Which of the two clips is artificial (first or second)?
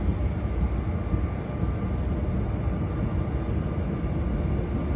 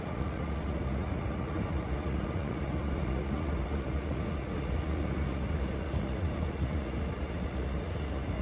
second